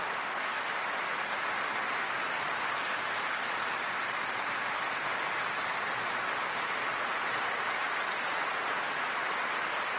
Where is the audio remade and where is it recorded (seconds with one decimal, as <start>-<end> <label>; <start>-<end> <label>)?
0.0-10.0 recorded